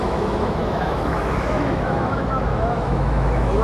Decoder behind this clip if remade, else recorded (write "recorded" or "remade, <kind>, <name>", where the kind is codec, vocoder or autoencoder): remade, autoencoder, DAC-VAE